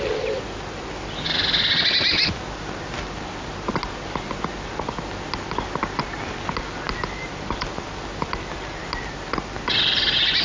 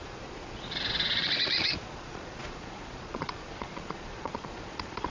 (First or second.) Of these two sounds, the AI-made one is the second